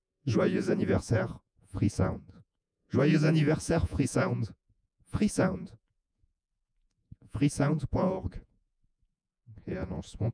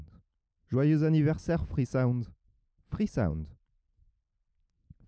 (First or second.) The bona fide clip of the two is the second